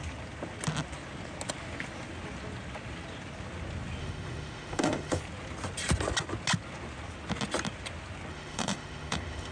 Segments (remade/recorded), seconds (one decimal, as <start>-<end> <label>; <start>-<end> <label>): 0.0-4.0 recorded; 4.0-5.2 remade; 5.2-8.3 recorded; 8.3-9.5 remade